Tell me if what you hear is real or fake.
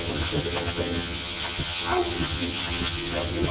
fake